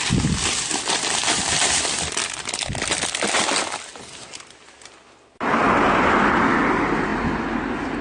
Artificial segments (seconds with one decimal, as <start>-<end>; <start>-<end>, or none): none